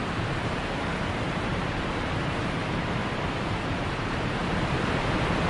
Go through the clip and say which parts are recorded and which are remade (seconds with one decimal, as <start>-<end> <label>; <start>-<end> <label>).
0.0-3.0 remade; 3.0-3.5 recorded; 3.5-4.4 remade; 4.4-5.5 recorded